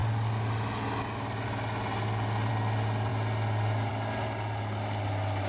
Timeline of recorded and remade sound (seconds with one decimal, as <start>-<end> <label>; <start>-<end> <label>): 0.0-5.5 recorded

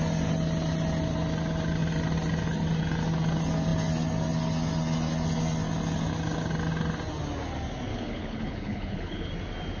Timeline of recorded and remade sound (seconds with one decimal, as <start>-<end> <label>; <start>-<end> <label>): 0.0-7.9 recorded; 7.9-9.3 remade; 9.3-9.8 recorded

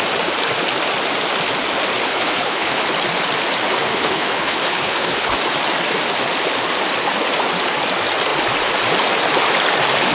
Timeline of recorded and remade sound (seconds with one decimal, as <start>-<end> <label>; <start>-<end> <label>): 0.0-2.1 recorded; 2.1-2.8 remade; 2.8-3.9 recorded; 3.9-5.3 remade; 5.3-10.1 recorded

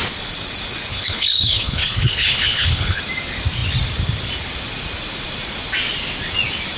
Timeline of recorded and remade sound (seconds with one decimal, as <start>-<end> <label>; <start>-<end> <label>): 0.0-0.9 recorded; 0.9-3.0 remade; 3.0-6.8 recorded

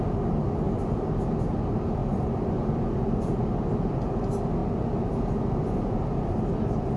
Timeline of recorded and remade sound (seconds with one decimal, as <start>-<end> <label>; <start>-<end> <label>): 0.0-7.0 recorded

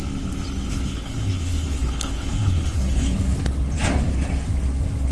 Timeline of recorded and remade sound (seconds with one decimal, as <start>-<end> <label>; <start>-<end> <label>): 0.0-0.7 recorded; 0.7-3.2 remade; 3.2-5.1 recorded

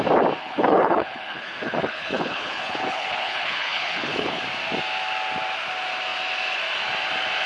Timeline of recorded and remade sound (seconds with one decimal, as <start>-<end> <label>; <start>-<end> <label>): 0.0-0.4 recorded; 0.4-4.4 remade; 4.4-7.5 recorded